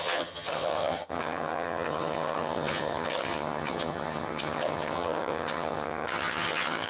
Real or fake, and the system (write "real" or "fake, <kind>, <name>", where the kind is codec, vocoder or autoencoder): fake, vocoder, HiFi-GAN